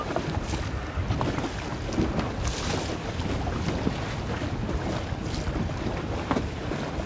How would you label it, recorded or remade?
recorded